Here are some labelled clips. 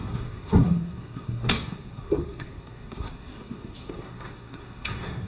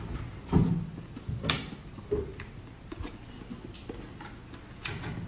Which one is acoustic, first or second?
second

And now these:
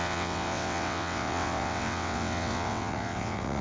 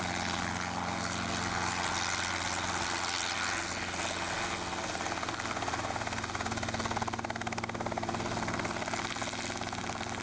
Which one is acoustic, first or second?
second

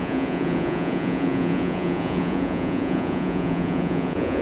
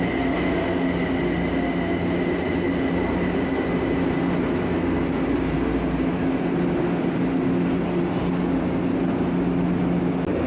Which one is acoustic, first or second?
second